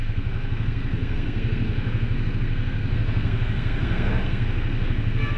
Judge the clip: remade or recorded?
remade